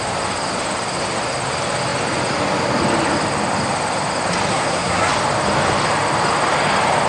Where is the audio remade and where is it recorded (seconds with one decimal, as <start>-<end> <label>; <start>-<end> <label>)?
0.0-4.5 recorded; 4.5-5.1 remade; 5.1-7.1 recorded